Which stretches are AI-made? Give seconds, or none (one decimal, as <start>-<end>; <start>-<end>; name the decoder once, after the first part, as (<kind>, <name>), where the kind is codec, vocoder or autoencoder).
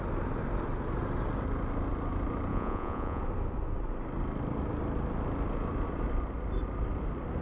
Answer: 2.5-3.2 (vocoder, Vocos)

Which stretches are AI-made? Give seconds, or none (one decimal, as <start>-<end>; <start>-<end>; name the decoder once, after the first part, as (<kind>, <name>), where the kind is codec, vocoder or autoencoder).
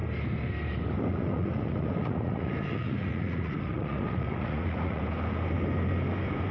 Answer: 1.1-5.0 (vocoder, Vocos)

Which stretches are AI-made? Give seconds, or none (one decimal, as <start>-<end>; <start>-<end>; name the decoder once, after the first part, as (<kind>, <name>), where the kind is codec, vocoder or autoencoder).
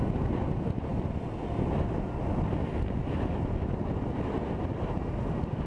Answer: none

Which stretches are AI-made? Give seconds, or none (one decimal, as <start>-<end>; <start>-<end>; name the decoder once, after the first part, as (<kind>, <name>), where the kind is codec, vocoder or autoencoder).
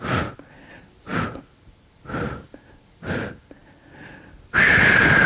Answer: none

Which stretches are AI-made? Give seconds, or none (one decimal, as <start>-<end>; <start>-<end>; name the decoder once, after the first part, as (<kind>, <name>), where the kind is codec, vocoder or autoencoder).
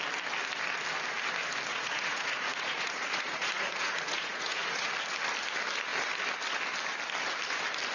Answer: 1.7-4.9 (vocoder, Vocos)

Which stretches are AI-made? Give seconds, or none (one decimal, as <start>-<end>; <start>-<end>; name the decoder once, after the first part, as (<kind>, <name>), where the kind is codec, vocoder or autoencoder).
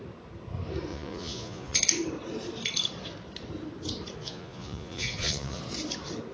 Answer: 0.9-1.8 (vocoder, Vocos); 4.2-5.6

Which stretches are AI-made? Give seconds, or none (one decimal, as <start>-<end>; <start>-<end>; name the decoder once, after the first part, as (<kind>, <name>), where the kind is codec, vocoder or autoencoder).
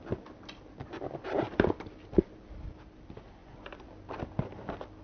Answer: 3.4-3.9 (vocoder, Vocos)